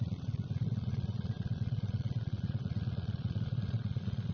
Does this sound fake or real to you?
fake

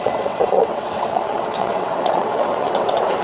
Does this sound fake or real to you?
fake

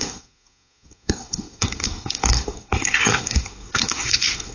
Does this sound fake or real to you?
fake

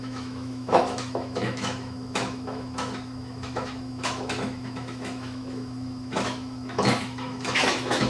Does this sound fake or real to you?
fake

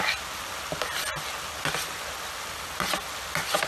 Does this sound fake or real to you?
real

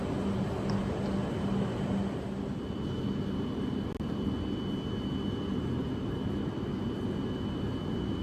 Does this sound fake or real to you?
real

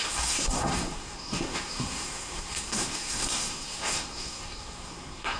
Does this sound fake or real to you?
fake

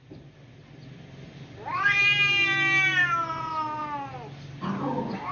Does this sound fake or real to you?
real